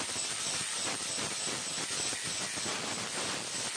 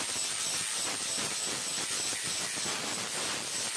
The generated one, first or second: first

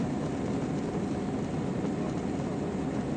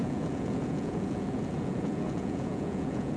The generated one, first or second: second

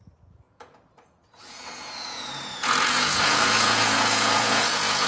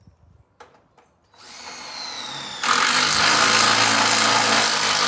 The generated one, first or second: first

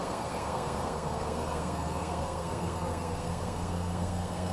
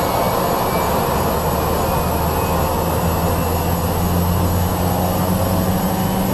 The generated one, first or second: first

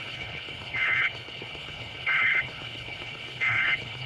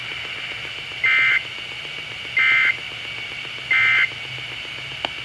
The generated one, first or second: first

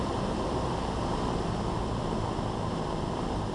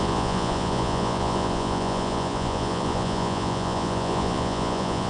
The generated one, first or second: second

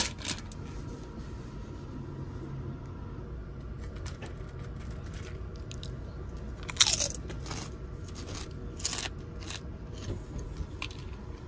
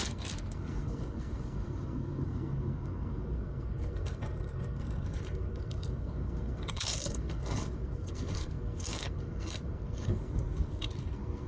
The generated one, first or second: second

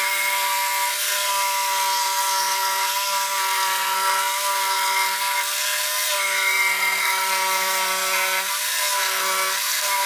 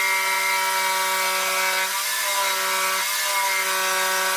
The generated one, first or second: first